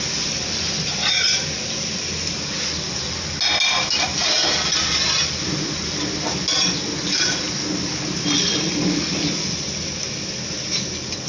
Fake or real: real